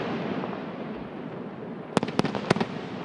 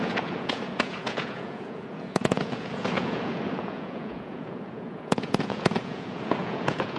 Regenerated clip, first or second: second